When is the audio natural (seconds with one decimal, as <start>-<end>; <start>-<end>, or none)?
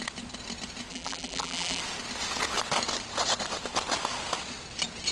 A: 0.0-0.9; 1.8-5.1